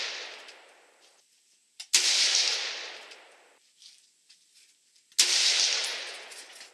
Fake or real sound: real